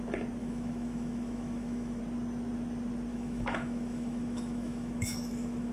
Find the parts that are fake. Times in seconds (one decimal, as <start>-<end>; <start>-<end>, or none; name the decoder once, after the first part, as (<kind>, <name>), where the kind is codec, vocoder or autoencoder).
0.4-2.0 (autoencoder, DAC-VAE); 3.1-5.7